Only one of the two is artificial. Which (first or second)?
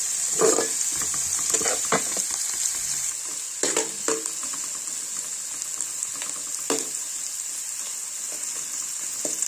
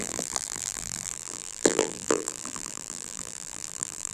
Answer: second